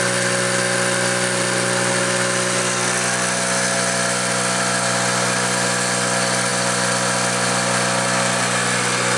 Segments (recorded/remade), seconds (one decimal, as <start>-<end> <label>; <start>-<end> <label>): 0.0-9.2 recorded